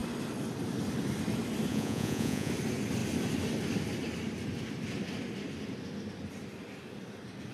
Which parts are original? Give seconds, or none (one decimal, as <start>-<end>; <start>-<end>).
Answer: 0.0-1.7; 2.5-7.5